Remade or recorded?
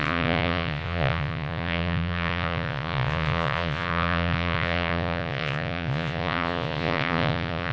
remade